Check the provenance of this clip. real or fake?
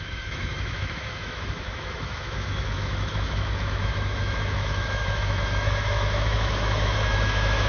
fake